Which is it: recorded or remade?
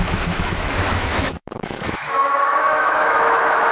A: remade